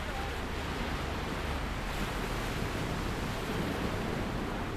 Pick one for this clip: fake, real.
real